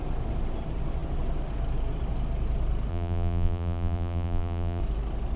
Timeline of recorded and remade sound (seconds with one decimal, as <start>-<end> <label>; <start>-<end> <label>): 0.0-2.9 recorded; 2.9-4.8 remade; 4.8-5.4 recorded